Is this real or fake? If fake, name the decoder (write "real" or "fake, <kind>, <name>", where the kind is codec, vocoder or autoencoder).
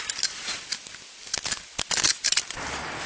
real